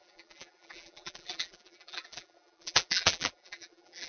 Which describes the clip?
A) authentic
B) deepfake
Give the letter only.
B